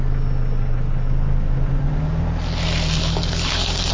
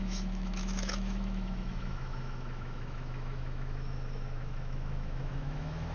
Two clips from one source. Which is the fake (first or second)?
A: second